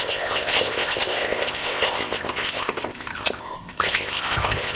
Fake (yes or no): yes